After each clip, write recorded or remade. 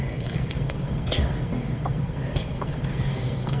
remade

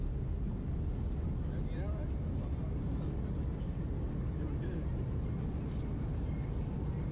recorded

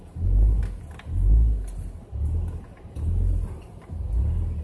recorded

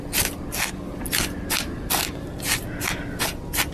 recorded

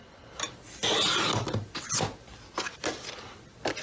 recorded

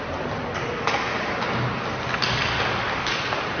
recorded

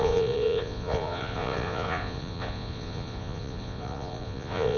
remade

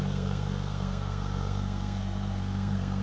remade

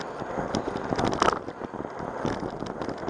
recorded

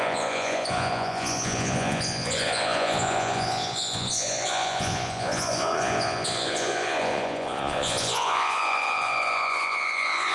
remade